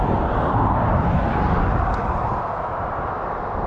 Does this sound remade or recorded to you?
recorded